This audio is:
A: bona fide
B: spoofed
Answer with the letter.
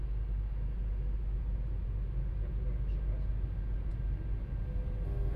A